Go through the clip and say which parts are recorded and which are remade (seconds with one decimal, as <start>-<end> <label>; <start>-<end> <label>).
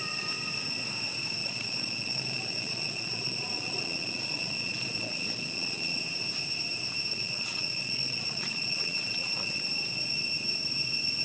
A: 0.0-1.4 recorded; 1.4-6.0 remade; 6.0-7.1 recorded; 7.1-9.6 remade; 9.6-11.2 recorded